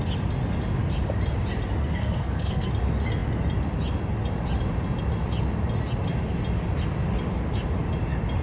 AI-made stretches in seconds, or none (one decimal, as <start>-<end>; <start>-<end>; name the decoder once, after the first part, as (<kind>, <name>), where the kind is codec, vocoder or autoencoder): 1.8-2.7 (codec, SNAC)

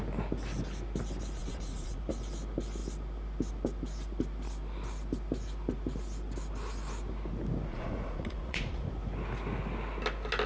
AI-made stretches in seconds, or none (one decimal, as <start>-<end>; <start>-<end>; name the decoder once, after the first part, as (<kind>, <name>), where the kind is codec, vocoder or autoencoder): 1.4-2.1 (vocoder, Vocos); 7.7-8.9

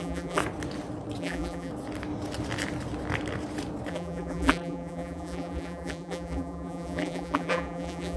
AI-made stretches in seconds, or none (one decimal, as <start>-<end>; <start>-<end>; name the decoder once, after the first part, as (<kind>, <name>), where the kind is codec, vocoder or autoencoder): 0.0-0.4 (vocoder, BigVGAN v2); 1.2-1.7; 3.9-8.2

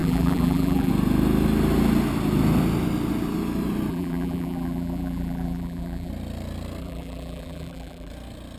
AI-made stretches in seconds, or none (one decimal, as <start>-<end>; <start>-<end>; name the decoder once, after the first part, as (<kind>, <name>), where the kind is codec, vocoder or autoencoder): 0.0-0.9 (vocoder, BigVGAN v2); 3.9-6.1; 6.8-8.1

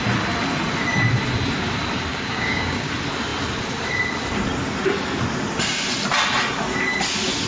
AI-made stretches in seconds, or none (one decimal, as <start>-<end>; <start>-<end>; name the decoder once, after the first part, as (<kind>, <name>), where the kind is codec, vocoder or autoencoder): 2.1-2.9 (codec, DAC)

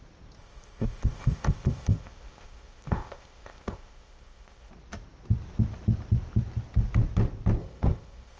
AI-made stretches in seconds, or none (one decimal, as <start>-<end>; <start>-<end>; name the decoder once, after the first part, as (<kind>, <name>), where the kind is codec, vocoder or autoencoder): 0.4-4.7 (codec, ZipCodec); 7.6-8.4

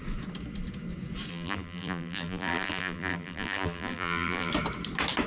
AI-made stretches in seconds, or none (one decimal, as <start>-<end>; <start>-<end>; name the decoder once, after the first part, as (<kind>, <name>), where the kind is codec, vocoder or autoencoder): 1.3-4.5 (vocoder, BigVGAN v2)

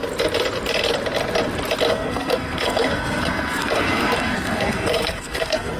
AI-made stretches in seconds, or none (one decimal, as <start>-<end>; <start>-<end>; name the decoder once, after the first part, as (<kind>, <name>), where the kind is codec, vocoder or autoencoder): 1.9-5.8 (codec, SNAC)